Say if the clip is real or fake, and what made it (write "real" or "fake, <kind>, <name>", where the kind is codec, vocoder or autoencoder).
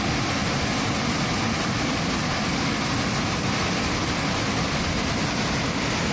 real